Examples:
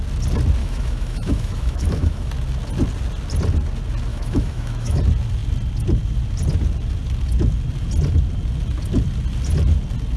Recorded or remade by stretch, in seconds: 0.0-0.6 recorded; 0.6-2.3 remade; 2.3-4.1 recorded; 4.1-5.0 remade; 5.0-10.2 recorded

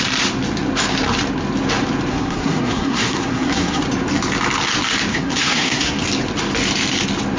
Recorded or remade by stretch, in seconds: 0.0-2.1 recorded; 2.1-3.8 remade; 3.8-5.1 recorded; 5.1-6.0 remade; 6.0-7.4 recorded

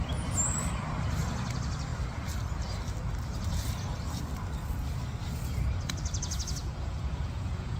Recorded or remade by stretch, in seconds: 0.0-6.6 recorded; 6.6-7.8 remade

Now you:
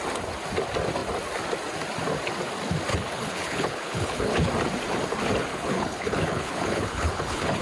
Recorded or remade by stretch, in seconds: 0.0-2.9 recorded; 2.9-4.5 remade; 4.5-5.5 recorded; 5.5-7.6 remade